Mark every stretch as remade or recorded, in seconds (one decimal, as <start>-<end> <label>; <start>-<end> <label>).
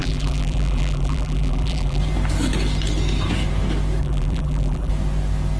0.0-2.0 remade; 2.0-4.0 recorded; 4.0-4.9 remade; 4.9-5.6 recorded